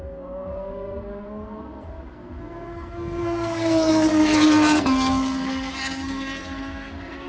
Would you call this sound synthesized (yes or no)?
yes